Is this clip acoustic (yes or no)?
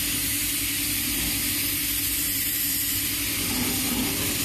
yes